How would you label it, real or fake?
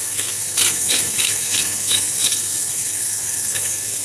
fake